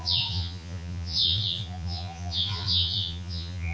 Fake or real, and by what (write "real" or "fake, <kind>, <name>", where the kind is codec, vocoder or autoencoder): fake, vocoder, Vocos